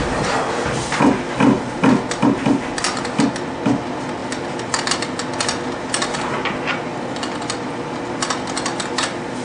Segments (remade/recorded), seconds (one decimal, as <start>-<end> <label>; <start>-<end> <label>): 0.0-9.4 recorded